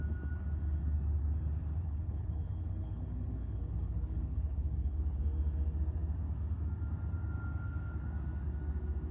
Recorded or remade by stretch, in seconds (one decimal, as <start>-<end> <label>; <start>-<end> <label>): 0.0-1.8 recorded; 1.8-5.2 remade; 5.2-9.1 recorded